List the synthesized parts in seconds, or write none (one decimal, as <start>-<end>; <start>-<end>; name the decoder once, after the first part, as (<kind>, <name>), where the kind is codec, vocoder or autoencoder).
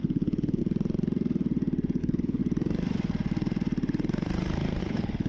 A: 0.0-0.6 (codec, HILCodec); 2.0-2.4; 4.8-5.3